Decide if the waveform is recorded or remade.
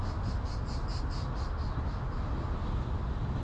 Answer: recorded